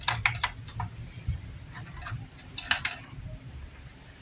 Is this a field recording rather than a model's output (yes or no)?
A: yes